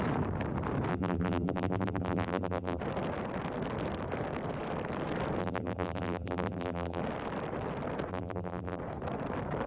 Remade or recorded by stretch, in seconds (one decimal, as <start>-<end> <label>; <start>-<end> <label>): 0.0-0.9 recorded; 0.9-2.8 remade; 2.8-5.4 recorded; 5.4-7.0 remade; 7.0-8.1 recorded; 8.1-8.8 remade; 8.8-9.7 recorded